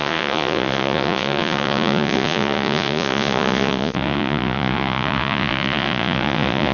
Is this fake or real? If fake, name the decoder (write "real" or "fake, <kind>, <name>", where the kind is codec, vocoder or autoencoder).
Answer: fake, vocoder, Vocos